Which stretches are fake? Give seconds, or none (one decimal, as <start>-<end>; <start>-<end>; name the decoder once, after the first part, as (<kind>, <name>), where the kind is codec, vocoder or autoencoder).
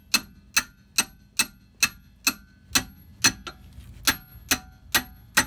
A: none